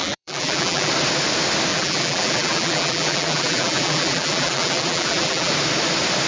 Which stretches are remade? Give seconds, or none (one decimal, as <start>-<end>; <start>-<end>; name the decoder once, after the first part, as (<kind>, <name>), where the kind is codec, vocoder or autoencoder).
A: 0.0-0.9 (vocoder, BigVGAN v2); 1.7-5.5